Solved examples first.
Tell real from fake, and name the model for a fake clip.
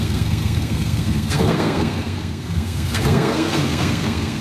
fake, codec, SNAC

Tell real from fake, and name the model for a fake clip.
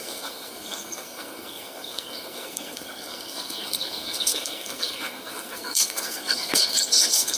fake, codec, SNAC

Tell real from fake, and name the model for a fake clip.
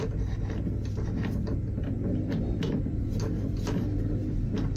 real